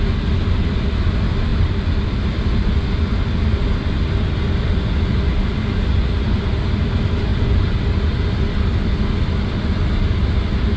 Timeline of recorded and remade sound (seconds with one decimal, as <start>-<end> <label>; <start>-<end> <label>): 0.0-1.5 recorded; 1.5-2.2 remade; 2.2-7.3 recorded; 7.3-7.8 remade; 7.8-10.8 recorded